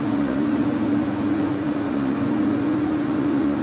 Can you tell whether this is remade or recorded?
remade